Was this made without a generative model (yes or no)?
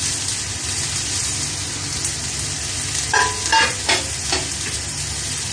yes